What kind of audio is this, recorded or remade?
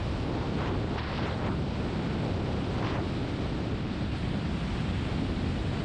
remade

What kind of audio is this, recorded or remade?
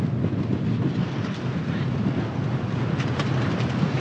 recorded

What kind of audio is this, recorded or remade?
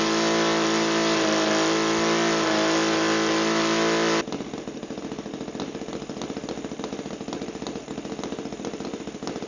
recorded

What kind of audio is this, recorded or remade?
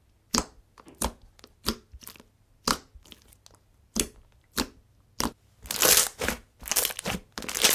recorded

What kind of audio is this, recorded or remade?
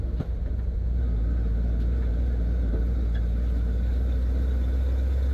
recorded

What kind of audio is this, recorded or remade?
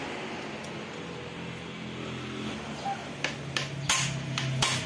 recorded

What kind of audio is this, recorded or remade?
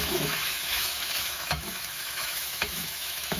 remade